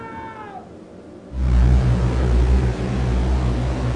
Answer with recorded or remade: recorded